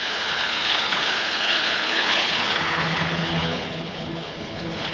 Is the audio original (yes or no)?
no